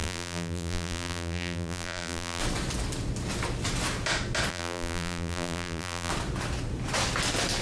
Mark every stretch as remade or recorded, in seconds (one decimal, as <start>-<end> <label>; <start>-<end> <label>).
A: 0.0-2.4 remade; 2.4-4.5 recorded; 4.5-6.1 remade; 6.1-7.6 recorded